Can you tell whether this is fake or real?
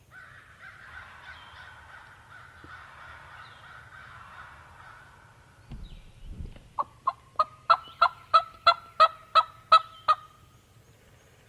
real